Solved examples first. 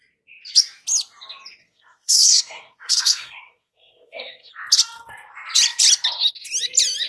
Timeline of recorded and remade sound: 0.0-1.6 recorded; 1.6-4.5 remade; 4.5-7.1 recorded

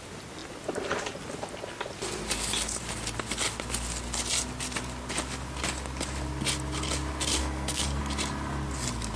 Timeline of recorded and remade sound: 0.0-7.4 recorded; 7.4-8.0 remade; 8.0-9.2 recorded